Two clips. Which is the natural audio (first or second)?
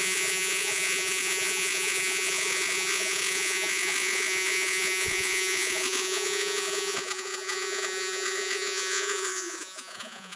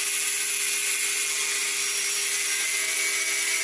second